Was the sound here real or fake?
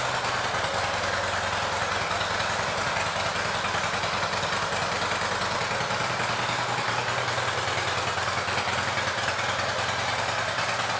real